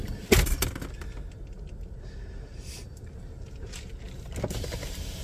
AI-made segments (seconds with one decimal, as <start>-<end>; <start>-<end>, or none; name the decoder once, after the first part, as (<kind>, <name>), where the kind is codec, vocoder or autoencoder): 2.5-3.9 (vocoder, BigVGAN v2)